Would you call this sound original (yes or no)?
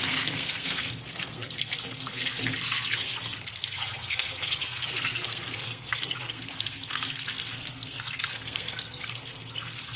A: no